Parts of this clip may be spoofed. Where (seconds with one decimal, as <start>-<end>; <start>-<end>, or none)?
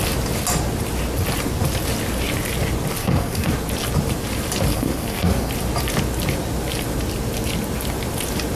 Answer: 3.0-3.5; 4.7-5.5